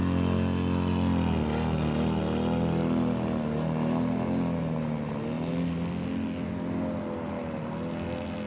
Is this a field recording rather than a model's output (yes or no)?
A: yes